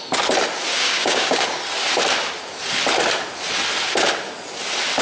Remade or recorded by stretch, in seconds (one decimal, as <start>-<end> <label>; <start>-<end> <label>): 0.0-0.7 recorded; 0.7-1.4 remade; 1.4-5.0 recorded